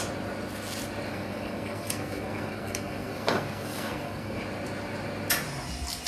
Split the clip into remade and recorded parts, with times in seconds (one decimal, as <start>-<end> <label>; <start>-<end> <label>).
0.0-1.1 recorded; 1.1-4.4 remade; 4.4-6.1 recorded